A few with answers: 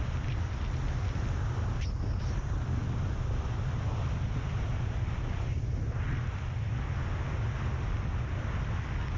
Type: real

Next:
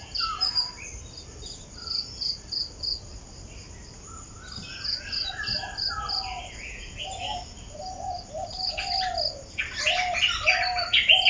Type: real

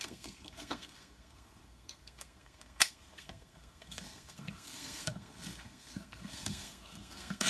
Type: fake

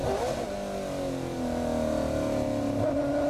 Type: real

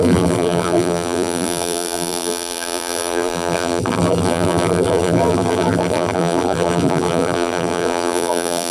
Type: fake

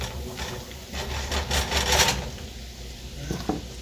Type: real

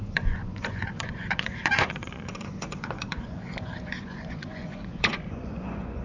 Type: fake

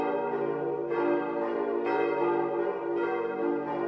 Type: real